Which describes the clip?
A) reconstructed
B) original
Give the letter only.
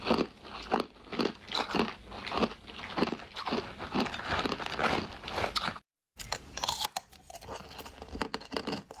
B